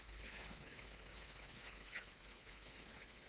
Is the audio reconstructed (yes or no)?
yes